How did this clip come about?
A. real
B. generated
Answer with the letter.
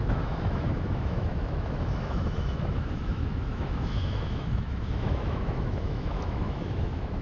B